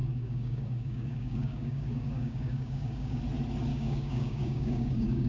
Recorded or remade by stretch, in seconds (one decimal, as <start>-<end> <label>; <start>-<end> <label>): 0.0-3.2 remade; 3.2-3.7 recorded; 3.7-5.3 remade